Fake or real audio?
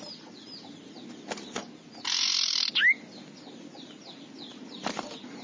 real